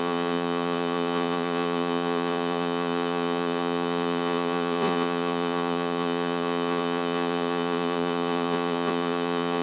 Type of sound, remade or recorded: remade